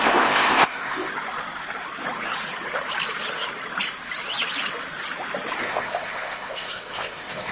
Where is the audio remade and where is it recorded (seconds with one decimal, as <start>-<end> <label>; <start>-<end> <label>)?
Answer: 0.0-1.1 remade; 1.1-5.6 recorded; 5.6-7.5 remade